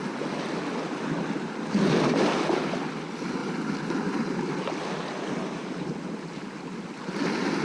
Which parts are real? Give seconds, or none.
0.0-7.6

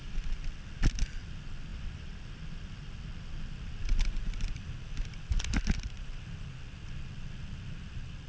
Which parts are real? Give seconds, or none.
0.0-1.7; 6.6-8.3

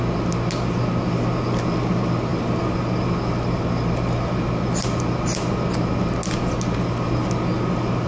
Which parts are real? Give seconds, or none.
0.0-8.1

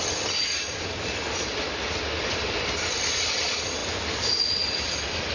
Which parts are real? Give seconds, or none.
0.0-5.3

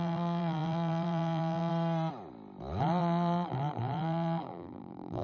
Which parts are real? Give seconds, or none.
1.7-2.8

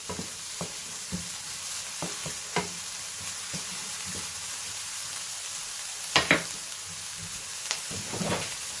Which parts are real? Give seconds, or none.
5.0-7.4